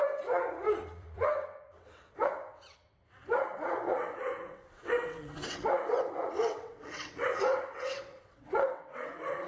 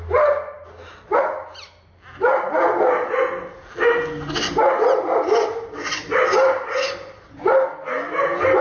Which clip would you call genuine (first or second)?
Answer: second